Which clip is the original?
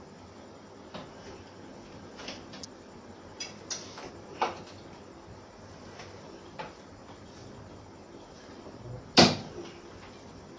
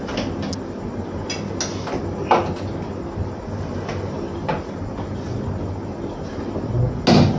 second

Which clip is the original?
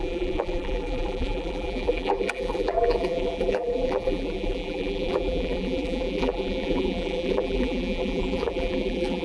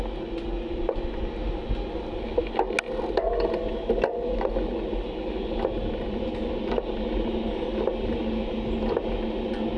second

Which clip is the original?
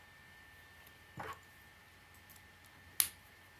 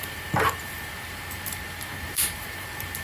first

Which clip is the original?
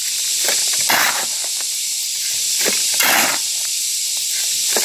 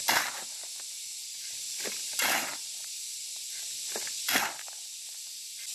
second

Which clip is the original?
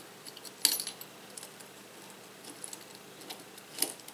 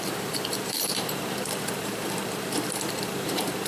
first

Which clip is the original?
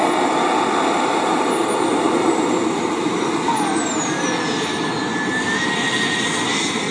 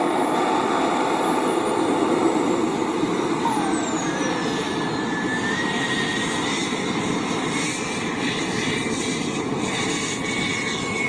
first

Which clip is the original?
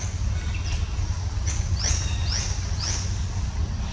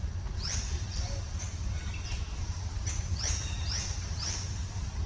first